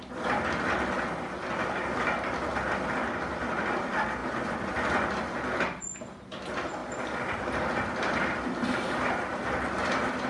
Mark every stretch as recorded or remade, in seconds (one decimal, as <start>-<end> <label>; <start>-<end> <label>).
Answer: 0.0-10.3 recorded